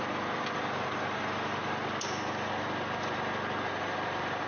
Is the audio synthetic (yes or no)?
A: no